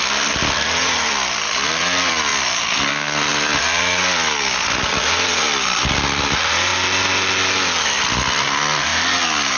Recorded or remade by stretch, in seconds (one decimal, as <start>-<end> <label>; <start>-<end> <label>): 0.0-2.3 remade; 2.3-2.9 recorded; 2.9-6.7 remade; 6.7-7.8 recorded; 7.8-8.9 remade; 8.9-9.6 recorded